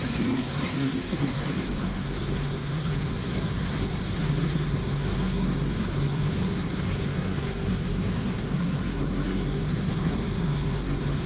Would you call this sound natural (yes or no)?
no